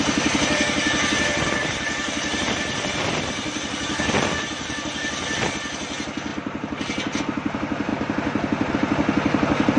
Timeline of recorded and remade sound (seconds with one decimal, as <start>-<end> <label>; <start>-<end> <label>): 0.0-9.8 recorded